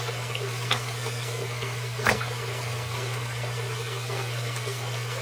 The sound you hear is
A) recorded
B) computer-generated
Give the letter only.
B